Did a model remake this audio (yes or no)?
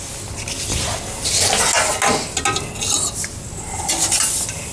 no